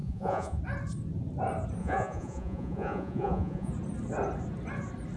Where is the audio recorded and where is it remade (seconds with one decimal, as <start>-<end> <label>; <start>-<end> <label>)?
0.0-0.6 remade; 0.6-1.8 recorded; 1.8-3.7 remade; 3.7-5.2 recorded